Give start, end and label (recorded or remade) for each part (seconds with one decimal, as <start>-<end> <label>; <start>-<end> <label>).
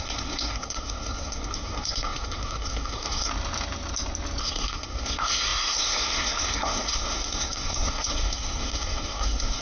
0.0-3.3 remade; 3.3-4.4 recorded; 4.4-9.6 remade